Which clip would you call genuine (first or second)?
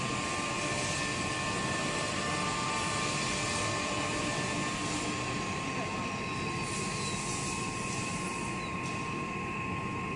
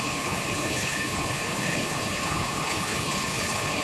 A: first